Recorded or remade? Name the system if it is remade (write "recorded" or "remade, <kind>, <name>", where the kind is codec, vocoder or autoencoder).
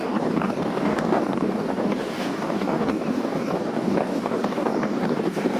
remade, codec, DAC